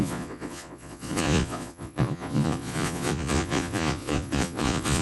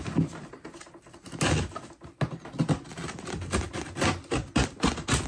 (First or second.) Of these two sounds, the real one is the second